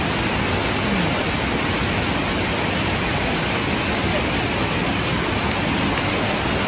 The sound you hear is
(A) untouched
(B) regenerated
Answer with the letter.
A